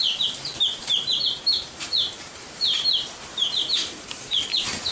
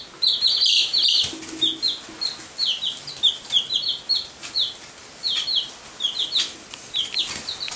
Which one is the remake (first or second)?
first